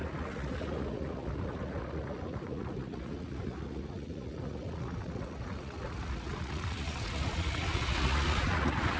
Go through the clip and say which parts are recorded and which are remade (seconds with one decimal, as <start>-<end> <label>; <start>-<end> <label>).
0.0-9.0 remade

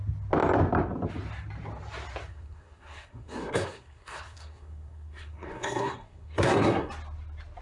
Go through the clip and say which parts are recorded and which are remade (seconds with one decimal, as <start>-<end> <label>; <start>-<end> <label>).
0.0-2.3 recorded; 2.3-6.9 remade; 6.9-7.6 recorded

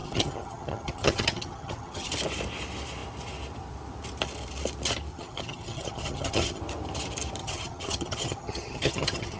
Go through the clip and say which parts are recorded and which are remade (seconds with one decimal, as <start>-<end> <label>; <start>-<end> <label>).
0.0-2.1 remade; 2.1-5.1 recorded; 5.1-6.6 remade; 6.6-7.4 recorded; 7.4-9.4 remade

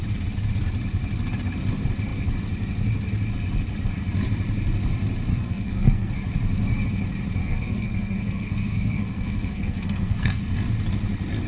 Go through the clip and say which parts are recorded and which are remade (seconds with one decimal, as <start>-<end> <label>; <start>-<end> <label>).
0.0-5.3 recorded; 5.3-6.1 remade; 6.1-7.4 recorded; 7.4-10.4 remade; 10.4-11.5 recorded

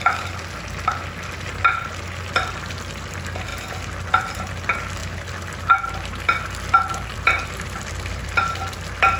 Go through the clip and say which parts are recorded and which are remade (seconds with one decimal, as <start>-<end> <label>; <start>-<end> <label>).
0.0-7.1 recorded; 7.1-8.5 remade; 8.5-9.2 recorded